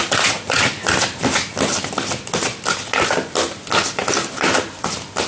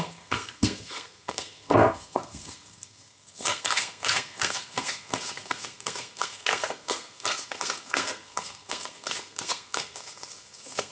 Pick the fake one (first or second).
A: second